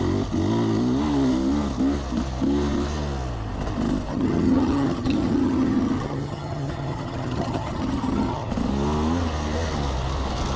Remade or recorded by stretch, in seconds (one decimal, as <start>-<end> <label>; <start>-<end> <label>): 0.0-4.1 recorded; 4.1-8.5 remade; 8.5-10.6 recorded